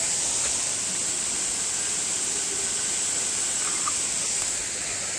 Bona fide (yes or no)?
yes